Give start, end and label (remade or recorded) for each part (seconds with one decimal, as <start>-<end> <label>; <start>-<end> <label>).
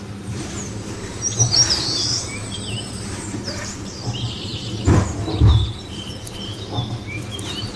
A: 0.0-2.3 remade; 2.3-2.9 recorded; 2.9-7.8 remade